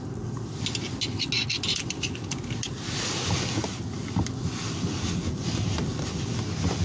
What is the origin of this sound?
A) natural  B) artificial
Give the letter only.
A